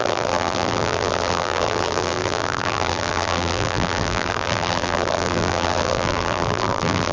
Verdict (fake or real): fake